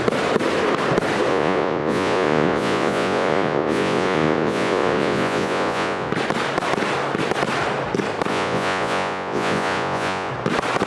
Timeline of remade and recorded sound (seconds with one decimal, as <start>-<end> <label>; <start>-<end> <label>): 0.0-1.3 recorded; 1.3-6.1 remade; 6.1-8.3 recorded; 8.3-10.3 remade; 10.3-10.9 recorded